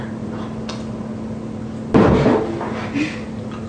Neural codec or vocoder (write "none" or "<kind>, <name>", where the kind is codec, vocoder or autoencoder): none